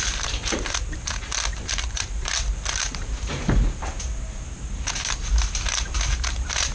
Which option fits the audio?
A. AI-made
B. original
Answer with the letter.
A